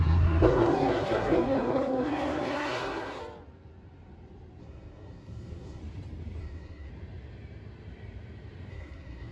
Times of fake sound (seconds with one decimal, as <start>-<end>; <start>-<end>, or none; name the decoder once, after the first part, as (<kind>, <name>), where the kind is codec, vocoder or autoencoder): 0.0-3.2 (codec, SNAC); 4.6-5.8; 6.4-6.9; 8.7-9.3